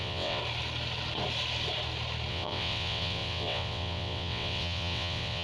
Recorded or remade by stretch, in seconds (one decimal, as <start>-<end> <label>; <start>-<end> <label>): 0.0-0.4 remade; 0.4-2.3 recorded; 2.3-5.4 remade